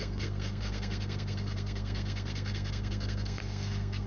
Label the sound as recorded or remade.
remade